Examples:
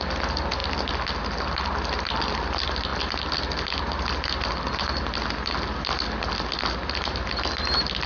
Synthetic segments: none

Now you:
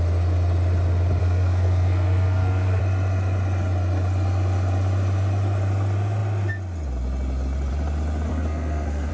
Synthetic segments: 1.2-2.8 (codec, SNAC); 8.3-9.1